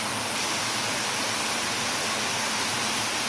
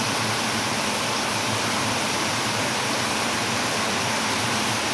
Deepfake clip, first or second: second